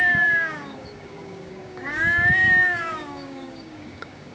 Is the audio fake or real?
fake